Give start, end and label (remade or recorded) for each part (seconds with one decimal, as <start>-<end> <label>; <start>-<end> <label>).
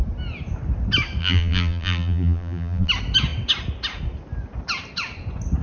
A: 0.0-1.2 recorded; 1.2-2.9 remade; 2.9-5.6 recorded